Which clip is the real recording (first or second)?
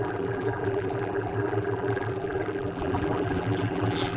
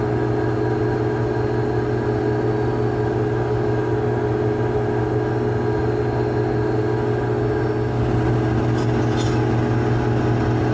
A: second